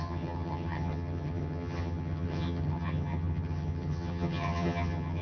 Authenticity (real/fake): fake